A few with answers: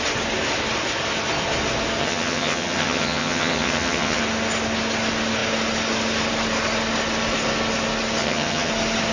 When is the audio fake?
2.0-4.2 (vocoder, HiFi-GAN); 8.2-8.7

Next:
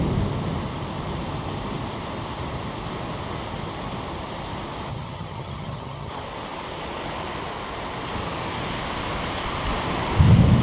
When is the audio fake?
4.9-6.1 (vocoder, HiFi-GAN)

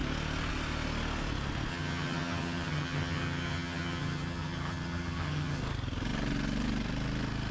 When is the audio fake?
1.7-5.6 (vocoder, HiFi-GAN)

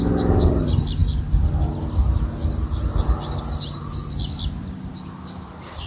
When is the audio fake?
none

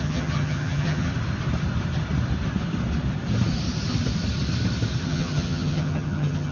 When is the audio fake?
0.0-1.1 (vocoder, HiFi-GAN); 5.0-6.5